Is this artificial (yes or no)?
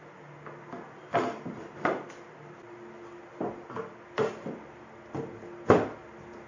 no